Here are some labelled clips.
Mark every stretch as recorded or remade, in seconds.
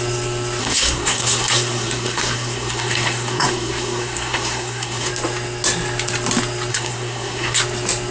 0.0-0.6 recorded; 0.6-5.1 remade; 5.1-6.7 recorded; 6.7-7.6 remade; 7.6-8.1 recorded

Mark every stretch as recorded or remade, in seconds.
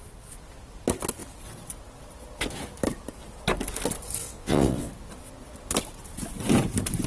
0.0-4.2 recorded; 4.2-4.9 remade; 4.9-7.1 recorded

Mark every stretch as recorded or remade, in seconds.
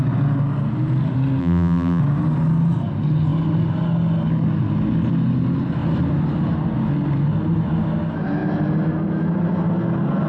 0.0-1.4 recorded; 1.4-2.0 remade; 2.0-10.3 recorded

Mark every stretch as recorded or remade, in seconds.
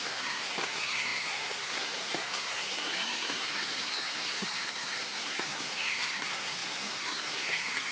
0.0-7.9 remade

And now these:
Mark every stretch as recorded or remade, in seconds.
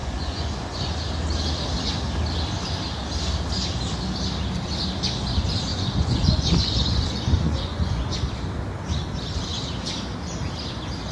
0.0-0.9 remade; 0.9-5.7 recorded; 5.7-8.2 remade; 8.2-11.1 recorded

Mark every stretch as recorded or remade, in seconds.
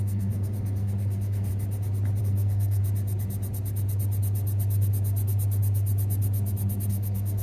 0.0-1.5 remade; 1.5-2.2 recorded; 2.2-2.8 remade; 2.8-6.9 recorded; 6.9-7.4 remade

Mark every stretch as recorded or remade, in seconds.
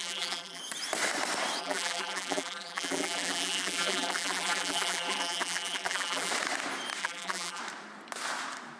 0.0-0.6 remade; 0.6-1.6 recorded; 1.6-6.3 remade; 6.3-7.0 recorded; 7.0-7.6 remade; 7.6-8.8 recorded